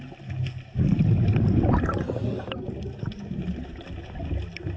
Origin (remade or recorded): recorded